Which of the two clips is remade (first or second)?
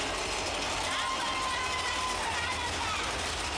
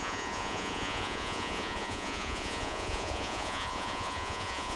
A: second